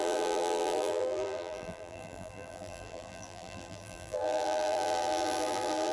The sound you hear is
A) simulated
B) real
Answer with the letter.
A